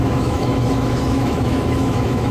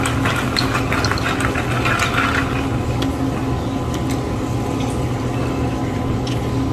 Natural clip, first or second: second